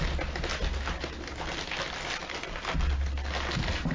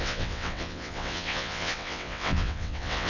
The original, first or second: first